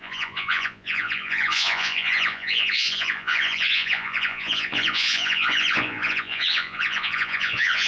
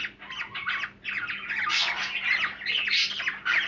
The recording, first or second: second